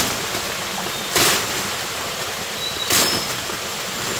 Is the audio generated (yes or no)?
no